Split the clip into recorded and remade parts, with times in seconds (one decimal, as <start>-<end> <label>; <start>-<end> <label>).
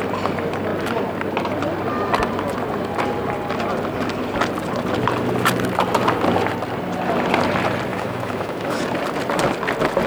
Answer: 0.0-7.9 recorded; 7.9-8.8 remade; 8.8-10.1 recorded